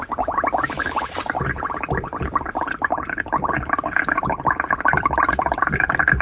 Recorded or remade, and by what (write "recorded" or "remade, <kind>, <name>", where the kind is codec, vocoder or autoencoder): recorded